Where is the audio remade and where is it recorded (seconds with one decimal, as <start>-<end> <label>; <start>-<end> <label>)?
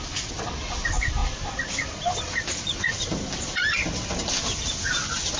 0.0-5.4 recorded